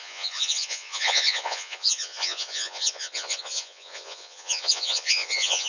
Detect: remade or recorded remade